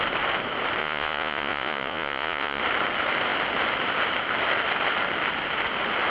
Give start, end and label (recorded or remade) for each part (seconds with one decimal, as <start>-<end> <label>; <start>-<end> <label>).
0.0-0.8 recorded; 0.8-2.6 remade; 2.6-6.1 recorded